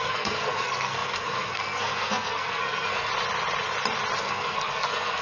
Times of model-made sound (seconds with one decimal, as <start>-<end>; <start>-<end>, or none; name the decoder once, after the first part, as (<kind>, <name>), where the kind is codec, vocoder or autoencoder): 0.0-3.1 (codec, SNAC); 4.2-5.2